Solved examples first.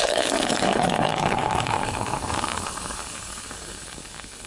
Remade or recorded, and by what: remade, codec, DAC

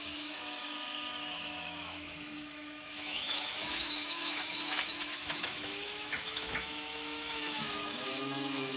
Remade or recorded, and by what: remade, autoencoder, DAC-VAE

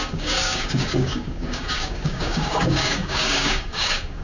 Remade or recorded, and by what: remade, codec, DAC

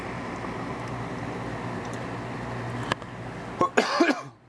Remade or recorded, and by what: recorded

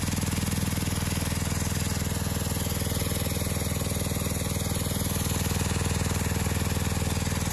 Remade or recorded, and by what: recorded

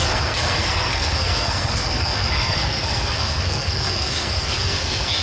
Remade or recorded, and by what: remade, codec, SNAC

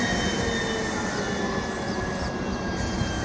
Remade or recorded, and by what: recorded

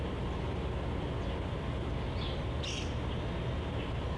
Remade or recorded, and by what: recorded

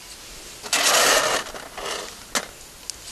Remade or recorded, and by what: recorded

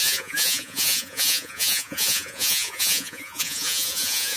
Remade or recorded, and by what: remade, vocoder, Vocos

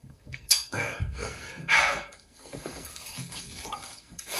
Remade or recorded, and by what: remade, codec, SNAC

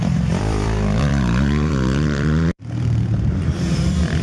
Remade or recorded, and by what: remade, vocoder, BigVGAN v2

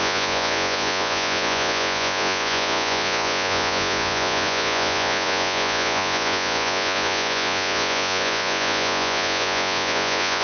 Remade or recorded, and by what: remade, vocoder, Vocos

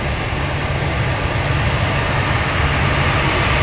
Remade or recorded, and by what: recorded